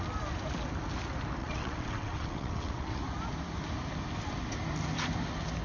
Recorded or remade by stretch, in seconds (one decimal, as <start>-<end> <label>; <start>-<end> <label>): 0.0-1.4 recorded; 1.4-3.0 remade; 3.0-5.6 recorded